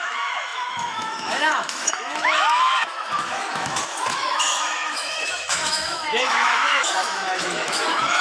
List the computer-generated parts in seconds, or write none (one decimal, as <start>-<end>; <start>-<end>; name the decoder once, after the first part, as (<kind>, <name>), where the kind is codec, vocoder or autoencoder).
0.0-8.2 (autoencoder, DAC-VAE)